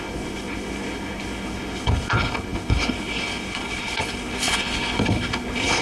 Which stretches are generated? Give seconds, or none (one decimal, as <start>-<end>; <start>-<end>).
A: 0.0-5.8